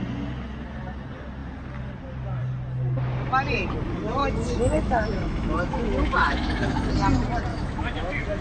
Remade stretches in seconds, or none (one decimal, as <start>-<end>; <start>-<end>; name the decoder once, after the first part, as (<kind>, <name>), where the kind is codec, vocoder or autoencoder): 4.2-6.9 (autoencoder, DAC-VAE); 7.5-8.4

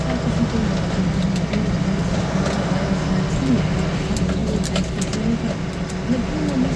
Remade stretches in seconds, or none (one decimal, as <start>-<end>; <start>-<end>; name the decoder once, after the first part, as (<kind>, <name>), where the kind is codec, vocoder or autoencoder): none

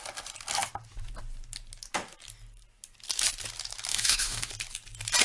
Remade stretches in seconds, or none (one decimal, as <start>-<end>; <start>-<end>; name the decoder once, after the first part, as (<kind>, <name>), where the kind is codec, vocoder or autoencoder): 3.9-4.5 (autoencoder, DAC-VAE)